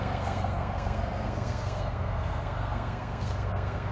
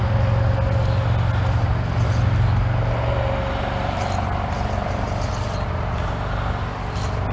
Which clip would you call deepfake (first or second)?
first